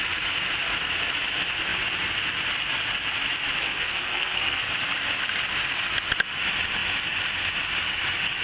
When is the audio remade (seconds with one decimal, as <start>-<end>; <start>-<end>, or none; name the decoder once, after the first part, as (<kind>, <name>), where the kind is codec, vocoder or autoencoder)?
3.6-4.6 (codec, SNAC)